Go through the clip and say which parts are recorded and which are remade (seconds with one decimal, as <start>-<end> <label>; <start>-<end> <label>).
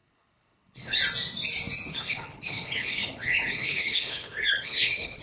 0.0-1.0 remade; 1.0-1.9 recorded; 1.9-5.2 remade